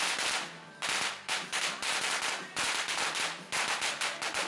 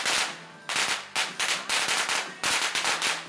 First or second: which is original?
second